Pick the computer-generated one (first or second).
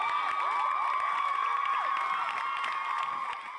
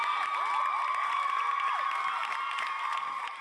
second